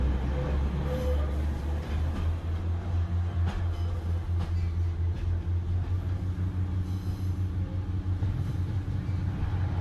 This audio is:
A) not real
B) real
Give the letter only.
B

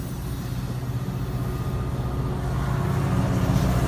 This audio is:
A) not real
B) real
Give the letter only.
B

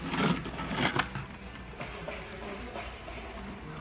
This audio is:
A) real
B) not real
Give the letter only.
A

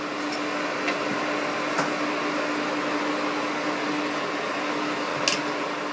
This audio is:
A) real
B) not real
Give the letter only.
A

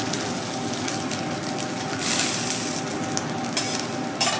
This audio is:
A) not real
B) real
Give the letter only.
B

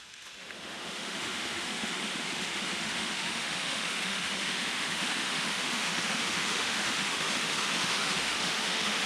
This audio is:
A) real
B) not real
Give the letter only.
B